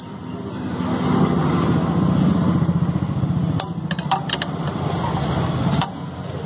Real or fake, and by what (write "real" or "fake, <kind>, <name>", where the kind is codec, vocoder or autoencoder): real